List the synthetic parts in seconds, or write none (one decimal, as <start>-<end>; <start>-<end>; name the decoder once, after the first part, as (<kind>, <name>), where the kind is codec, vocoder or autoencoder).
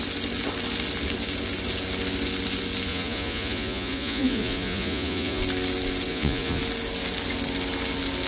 2.9-5.4 (vocoder, Vocos); 6.1-6.6